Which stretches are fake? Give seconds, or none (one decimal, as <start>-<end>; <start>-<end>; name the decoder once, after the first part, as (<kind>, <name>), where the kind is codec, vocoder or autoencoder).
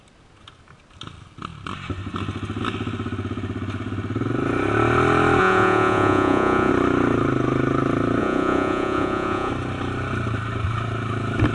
5.4-6.7 (vocoder, Vocos); 8.2-9.5